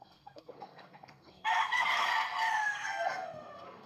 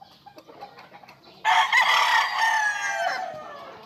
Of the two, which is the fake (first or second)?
first